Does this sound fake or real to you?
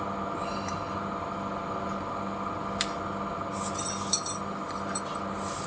real